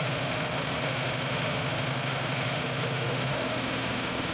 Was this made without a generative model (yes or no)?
no